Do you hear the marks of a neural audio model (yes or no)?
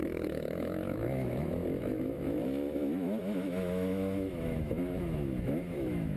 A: yes